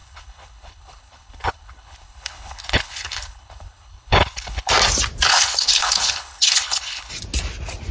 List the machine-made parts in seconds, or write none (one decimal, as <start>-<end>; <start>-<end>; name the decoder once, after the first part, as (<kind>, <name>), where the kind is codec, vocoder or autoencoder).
0.0-4.7 (codec, HILCodec); 5.3-7.1